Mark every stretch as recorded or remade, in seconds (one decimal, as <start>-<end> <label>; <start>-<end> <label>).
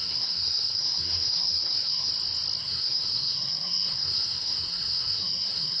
0.0-2.1 remade; 2.1-2.6 recorded; 2.6-5.8 remade